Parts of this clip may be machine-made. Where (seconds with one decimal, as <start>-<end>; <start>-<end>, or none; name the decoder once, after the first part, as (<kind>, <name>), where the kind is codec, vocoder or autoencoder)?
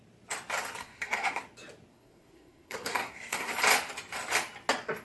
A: 0.8-1.4 (codec, SNAC); 1.9-3.5